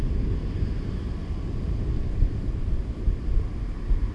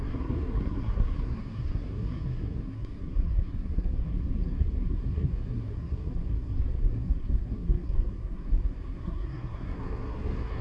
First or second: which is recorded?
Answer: first